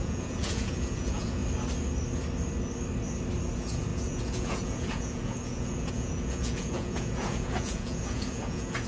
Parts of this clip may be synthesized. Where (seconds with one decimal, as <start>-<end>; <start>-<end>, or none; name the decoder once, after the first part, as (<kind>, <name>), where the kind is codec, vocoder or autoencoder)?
0.0-1.4 (vocoder, Vocos); 3.5-8.9